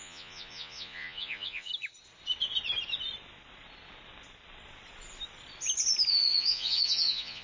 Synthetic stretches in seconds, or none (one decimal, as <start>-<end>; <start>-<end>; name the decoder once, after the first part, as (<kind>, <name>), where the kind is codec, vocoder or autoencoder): 0.0-1.7 (vocoder, Vocos); 6.1-7.4

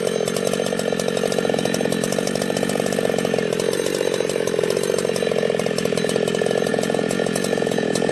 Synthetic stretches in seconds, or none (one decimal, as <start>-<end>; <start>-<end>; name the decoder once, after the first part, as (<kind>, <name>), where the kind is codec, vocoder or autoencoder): 6.7-8.1 (vocoder, Vocos)

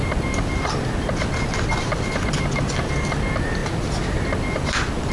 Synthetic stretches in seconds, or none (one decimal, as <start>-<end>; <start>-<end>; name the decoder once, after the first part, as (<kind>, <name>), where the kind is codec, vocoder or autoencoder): none

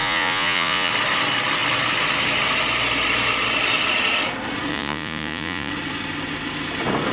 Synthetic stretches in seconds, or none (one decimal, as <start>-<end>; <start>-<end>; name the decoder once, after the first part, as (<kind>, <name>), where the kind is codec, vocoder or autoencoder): 0.0-0.9 (vocoder, Vocos); 4.7-5.7

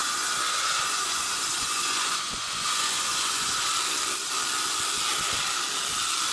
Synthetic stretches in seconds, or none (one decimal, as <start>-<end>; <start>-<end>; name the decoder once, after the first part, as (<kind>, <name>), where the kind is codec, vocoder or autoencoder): 0.0-3.7 (vocoder, Vocos)

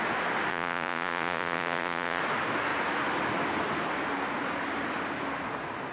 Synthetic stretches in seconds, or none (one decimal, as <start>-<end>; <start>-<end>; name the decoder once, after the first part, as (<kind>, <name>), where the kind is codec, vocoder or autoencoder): 0.5-2.2 (vocoder, Vocos)